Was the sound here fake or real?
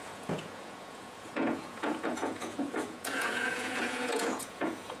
fake